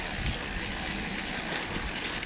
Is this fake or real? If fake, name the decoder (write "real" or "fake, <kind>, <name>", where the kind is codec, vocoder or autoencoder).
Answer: real